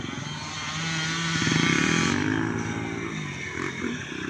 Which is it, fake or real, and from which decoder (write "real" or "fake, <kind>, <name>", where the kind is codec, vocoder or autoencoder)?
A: real